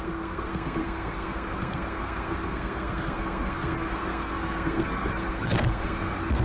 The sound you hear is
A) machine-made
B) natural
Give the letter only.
A